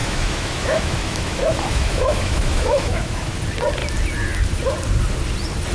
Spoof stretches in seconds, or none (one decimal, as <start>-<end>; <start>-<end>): 0.0-3.4